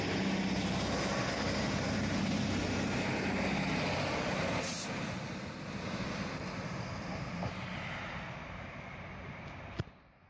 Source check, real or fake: real